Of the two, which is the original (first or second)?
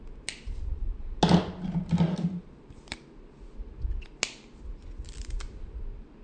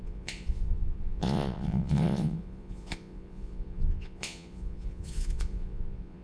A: first